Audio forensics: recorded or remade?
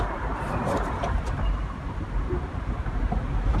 remade